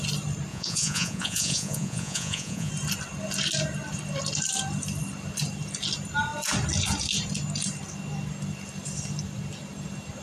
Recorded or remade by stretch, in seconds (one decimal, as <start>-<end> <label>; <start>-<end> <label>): 0.0-0.5 recorded; 0.5-2.7 remade; 2.7-10.2 recorded